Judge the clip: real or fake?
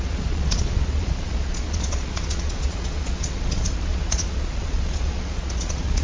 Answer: fake